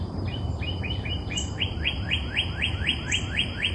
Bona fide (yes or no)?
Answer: no